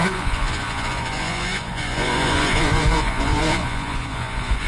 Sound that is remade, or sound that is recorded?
remade